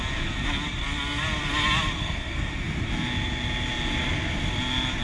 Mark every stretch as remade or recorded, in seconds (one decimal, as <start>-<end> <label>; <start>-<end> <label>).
0.0-2.0 recorded; 2.0-2.5 remade; 2.5-5.0 recorded